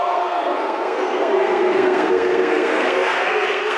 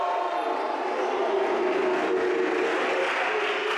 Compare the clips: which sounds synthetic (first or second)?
first